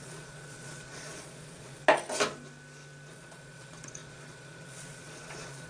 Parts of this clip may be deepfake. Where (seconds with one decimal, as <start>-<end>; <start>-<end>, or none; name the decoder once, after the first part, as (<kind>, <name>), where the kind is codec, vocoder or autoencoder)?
0.0-1.8 (vocoder, Vocos); 3.1-5.7